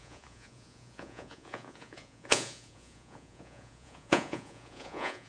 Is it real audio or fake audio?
fake